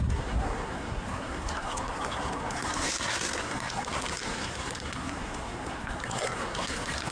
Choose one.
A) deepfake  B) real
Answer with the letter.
A